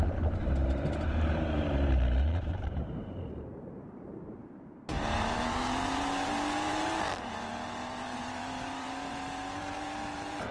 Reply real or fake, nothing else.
fake